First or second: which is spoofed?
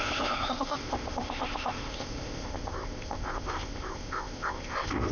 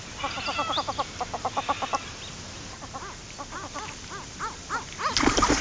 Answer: first